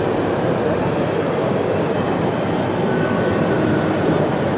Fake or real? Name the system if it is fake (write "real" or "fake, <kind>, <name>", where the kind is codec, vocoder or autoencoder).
real